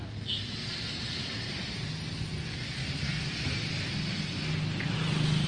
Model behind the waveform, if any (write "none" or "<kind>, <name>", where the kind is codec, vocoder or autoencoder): none